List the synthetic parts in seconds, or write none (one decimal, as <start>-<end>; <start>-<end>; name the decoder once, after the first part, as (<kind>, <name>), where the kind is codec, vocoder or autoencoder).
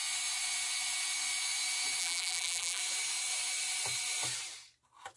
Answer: 2.0-2.8 (vocoder, BigVGAN v2)